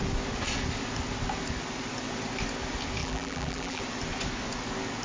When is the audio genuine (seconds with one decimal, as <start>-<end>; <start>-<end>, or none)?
0.0-3.0; 3.8-5.0